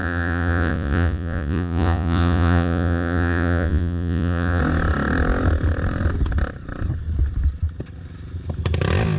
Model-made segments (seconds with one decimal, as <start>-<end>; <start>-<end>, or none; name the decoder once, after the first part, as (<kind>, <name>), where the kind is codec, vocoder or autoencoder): 0.0-4.6 (vocoder, Vocos)